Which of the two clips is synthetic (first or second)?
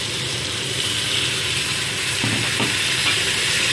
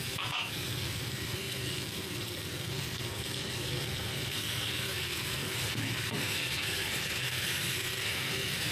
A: second